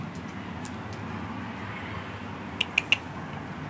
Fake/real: real